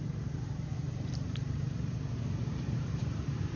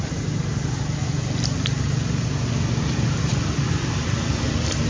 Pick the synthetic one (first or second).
first